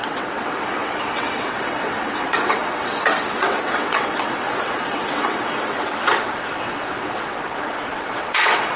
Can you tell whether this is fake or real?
fake